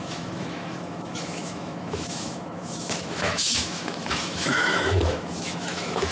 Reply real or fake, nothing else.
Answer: fake